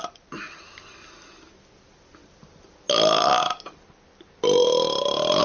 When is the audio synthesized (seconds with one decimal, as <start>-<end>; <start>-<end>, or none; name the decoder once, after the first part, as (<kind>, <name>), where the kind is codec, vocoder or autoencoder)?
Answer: none